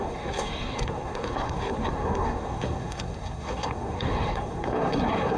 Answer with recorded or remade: remade